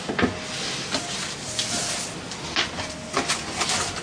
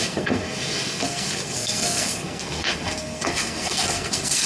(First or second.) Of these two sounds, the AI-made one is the second